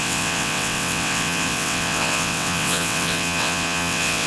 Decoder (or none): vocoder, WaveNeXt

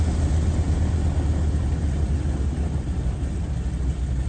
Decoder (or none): none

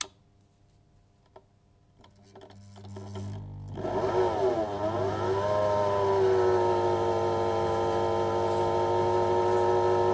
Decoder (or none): none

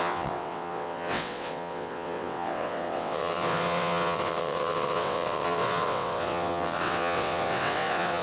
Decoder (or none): vocoder, WaveNeXt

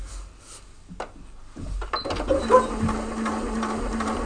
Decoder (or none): none